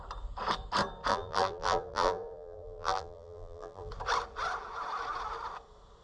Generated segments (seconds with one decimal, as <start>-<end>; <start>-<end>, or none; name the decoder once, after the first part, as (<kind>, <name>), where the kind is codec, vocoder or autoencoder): 1.1-3.9 (vocoder, BigVGAN v2)